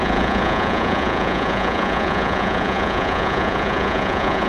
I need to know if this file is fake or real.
fake